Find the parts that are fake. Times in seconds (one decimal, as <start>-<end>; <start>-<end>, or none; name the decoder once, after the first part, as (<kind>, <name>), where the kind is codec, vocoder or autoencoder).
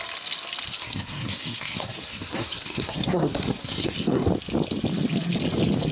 0.8-4.3 (codec, SNAC)